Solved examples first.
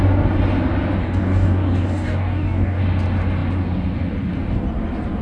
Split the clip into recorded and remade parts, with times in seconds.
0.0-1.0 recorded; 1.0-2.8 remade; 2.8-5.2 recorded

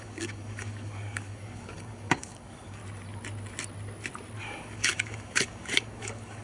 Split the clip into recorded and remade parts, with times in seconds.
0.0-2.8 remade; 2.8-4.4 recorded; 4.4-6.4 remade

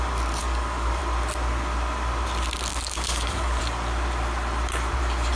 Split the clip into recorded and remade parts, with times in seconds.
0.0-0.4 recorded; 0.4-1.0 remade; 1.0-2.7 recorded; 2.7-3.6 remade; 3.6-5.4 recorded